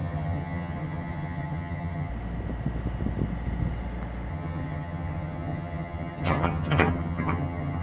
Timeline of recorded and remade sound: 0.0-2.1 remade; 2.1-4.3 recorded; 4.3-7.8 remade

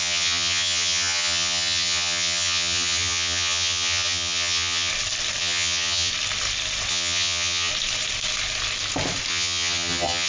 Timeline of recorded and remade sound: 0.0-4.9 remade; 4.9-5.4 recorded; 5.4-6.1 remade; 6.1-6.9 recorded; 6.9-7.7 remade; 7.7-9.3 recorded; 9.3-10.3 remade

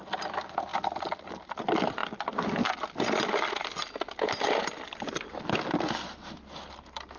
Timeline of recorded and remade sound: 0.0-7.2 recorded

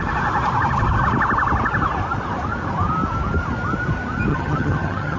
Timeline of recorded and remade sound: 0.0-4.3 recorded; 4.3-5.2 remade

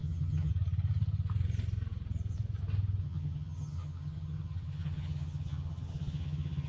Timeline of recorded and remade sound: 0.0-0.5 remade; 0.5-3.0 recorded; 3.0-6.7 remade